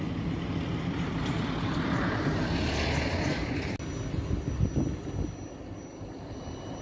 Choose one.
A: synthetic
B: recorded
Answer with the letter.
B